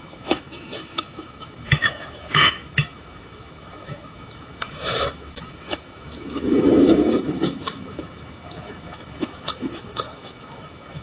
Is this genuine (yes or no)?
no